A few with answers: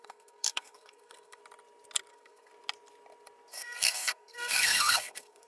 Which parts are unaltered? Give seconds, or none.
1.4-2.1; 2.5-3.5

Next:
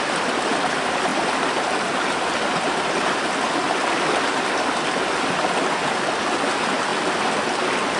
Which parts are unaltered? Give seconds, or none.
1.1-2.3; 6.9-8.0

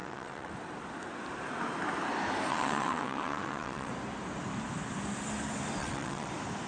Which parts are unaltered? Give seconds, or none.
0.5-2.5; 3.9-5.8; 6.3-6.7